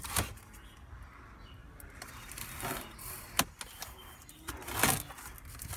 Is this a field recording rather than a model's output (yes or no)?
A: yes